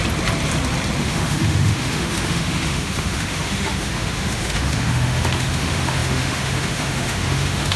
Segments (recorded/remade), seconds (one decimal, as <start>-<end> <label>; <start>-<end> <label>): 0.0-1.0 recorded; 1.0-7.8 remade